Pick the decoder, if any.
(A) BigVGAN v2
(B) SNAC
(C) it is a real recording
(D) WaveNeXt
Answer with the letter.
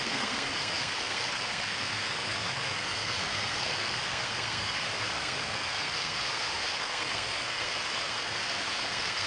B